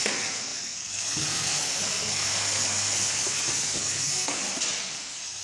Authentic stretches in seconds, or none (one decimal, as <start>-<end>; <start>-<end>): 4.4-4.9